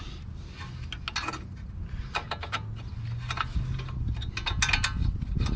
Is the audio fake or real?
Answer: real